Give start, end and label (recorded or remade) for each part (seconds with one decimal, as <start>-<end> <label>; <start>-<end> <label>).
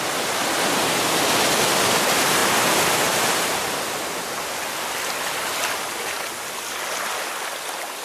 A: 0.0-8.0 recorded